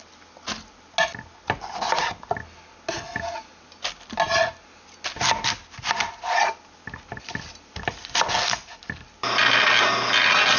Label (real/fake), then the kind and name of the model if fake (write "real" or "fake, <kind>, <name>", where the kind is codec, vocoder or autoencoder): real